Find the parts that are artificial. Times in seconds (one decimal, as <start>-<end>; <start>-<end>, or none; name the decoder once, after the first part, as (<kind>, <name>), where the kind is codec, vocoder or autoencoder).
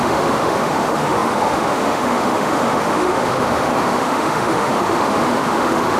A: 0.0-6.0 (autoencoder, DAC-VAE)